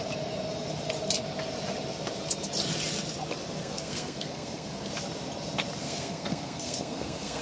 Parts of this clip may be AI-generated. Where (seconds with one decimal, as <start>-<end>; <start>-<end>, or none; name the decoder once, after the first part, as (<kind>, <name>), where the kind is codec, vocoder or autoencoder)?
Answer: 3.6-4.9 (codec, SNAC); 5.8-7.4